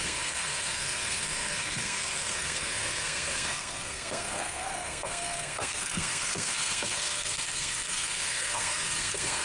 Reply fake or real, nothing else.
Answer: fake